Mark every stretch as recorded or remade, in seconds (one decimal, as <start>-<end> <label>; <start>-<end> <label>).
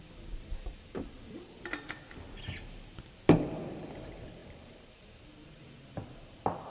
0.0-6.7 recorded